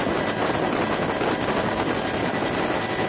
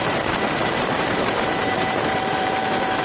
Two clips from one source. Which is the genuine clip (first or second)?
first